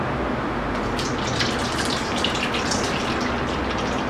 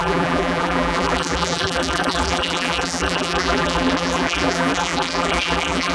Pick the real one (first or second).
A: first